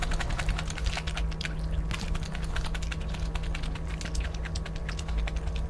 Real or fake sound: real